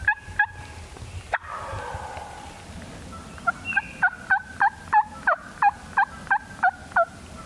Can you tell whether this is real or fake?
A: real